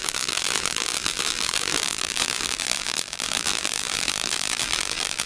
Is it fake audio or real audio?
fake